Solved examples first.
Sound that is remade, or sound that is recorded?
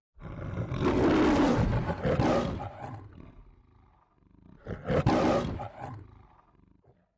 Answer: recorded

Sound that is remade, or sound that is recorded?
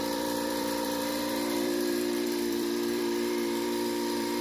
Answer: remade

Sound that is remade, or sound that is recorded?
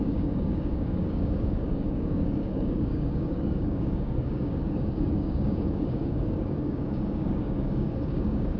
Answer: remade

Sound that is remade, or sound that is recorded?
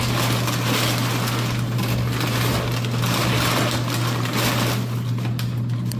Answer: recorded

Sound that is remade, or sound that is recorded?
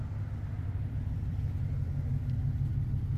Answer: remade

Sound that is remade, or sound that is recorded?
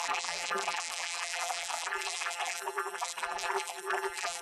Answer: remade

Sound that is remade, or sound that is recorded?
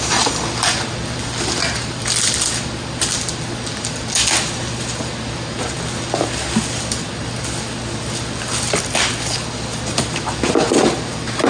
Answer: recorded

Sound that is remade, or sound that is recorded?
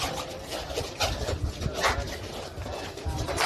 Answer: recorded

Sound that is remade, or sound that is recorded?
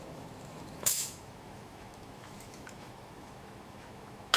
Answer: remade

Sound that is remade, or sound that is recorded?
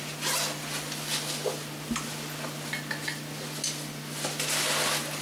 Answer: recorded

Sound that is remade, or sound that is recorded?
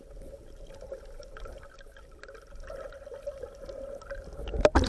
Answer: recorded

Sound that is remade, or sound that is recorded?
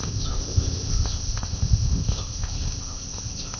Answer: remade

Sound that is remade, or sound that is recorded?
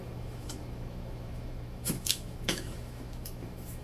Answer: remade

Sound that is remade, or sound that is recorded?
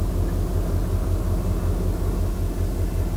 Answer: recorded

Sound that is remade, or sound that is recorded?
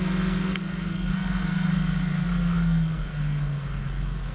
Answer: remade